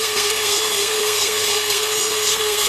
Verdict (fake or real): fake